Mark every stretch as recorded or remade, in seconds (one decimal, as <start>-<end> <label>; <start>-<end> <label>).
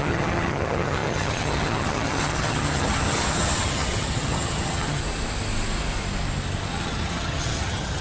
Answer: 0.0-5.0 remade; 5.0-6.7 recorded; 6.7-8.0 remade